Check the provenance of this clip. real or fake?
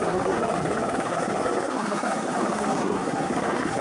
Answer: fake